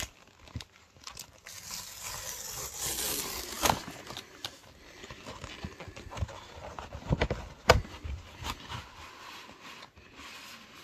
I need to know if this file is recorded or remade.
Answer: recorded